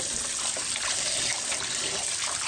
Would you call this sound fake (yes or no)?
no